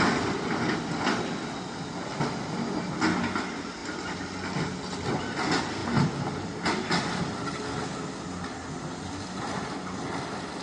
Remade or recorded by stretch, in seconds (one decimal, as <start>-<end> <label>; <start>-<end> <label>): 0.0-10.6 recorded